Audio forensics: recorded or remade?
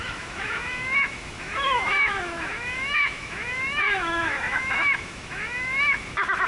remade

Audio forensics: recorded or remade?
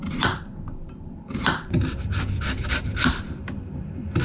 remade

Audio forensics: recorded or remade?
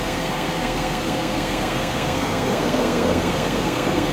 remade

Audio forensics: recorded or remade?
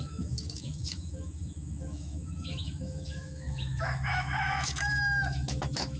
remade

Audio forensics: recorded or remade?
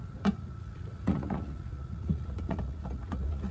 remade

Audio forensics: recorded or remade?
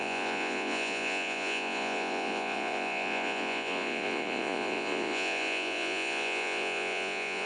remade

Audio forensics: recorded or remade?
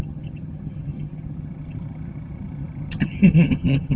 remade